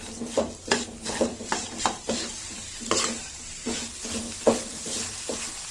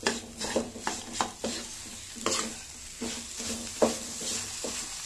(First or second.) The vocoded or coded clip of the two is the first